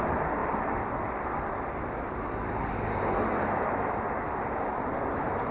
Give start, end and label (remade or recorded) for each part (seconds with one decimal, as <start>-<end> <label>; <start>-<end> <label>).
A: 0.0-5.5 recorded

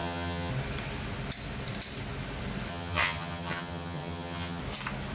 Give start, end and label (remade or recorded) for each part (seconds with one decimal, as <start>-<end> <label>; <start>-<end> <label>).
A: 0.0-0.5 remade; 0.5-2.7 recorded; 2.7-4.6 remade; 4.6-5.1 recorded

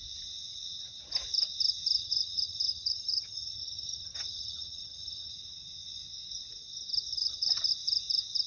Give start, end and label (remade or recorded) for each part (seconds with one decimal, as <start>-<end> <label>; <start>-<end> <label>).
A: 0.0-2.0 recorded; 2.0-5.3 remade; 5.3-7.1 recorded; 7.1-7.7 remade; 7.7-8.5 recorded

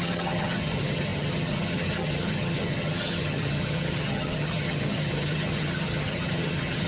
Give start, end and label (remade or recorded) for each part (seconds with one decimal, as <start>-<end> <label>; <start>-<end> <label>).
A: 0.0-6.9 remade

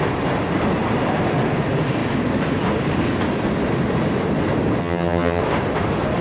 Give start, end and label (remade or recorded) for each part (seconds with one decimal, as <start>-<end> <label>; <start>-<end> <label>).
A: 0.0-4.8 recorded; 4.8-5.4 remade; 5.4-6.2 recorded

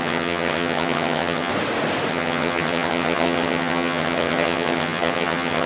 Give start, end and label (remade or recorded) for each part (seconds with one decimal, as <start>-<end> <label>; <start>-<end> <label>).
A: 0.0-1.5 remade; 1.5-2.1 recorded; 2.1-5.7 remade

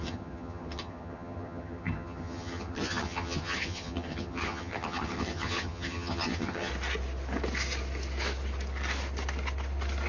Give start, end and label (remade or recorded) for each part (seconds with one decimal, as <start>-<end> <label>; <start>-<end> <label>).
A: 0.0-6.7 remade; 6.7-10.1 recorded

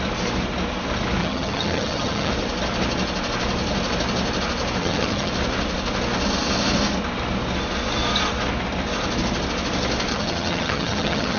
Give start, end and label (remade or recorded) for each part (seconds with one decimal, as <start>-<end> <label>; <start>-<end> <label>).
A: 0.0-1.2 recorded; 1.2-2.3 remade; 2.3-4.8 recorded; 4.8-5.3 remade; 5.3-10.1 recorded; 10.1-11.4 remade